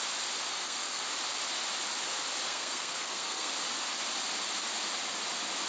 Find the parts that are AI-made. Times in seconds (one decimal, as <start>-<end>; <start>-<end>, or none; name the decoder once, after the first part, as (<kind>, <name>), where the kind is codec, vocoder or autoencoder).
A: 0.5-1.0 (codec, SNAC); 2.5-3.5